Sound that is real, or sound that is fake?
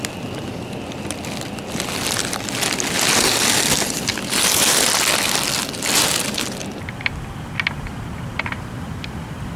real